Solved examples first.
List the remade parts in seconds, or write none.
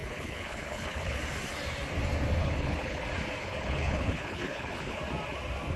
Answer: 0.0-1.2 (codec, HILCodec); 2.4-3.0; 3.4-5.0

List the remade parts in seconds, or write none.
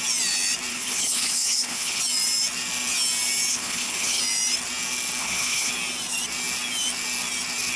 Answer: 0.7-2.0 (codec, HILCodec); 3.5-4.2; 5.2-5.7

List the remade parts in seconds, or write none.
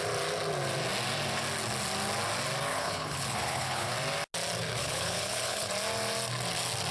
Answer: 2.7-3.9 (codec, HILCodec); 4.8-5.7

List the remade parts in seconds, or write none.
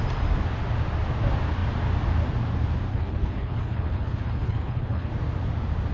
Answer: 2.9-5.1 (codec, HILCodec)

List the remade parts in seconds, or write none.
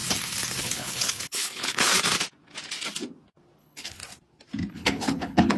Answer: 0.6-1.9 (codec, HILCodec); 3.6-4.0; 4.7-5.6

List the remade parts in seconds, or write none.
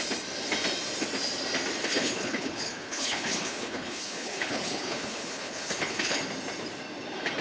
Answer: 1.8-6.2 (codec, HILCodec)